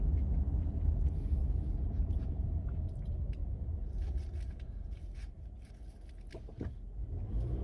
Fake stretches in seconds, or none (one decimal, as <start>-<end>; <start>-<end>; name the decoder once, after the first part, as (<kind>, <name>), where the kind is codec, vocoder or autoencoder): 1.4-3.0 (vocoder, BigVGAN v2); 3.4-5.7